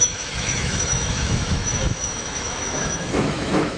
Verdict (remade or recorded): remade